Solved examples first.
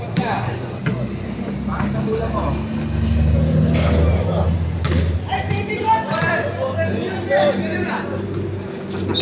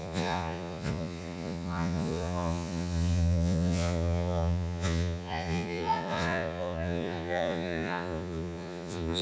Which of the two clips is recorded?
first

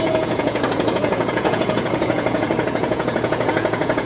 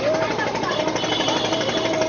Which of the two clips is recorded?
second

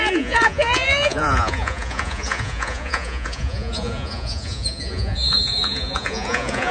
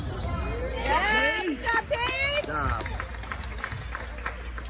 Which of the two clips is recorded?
second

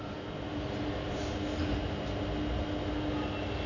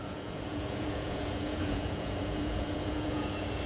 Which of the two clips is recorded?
first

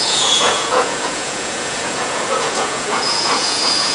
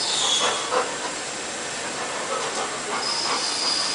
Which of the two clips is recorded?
second